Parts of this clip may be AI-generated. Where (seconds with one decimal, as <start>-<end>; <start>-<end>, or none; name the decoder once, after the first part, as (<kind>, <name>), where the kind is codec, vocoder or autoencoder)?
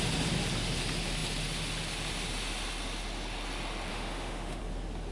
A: 3.9-4.6 (autoencoder, DAC-VAE)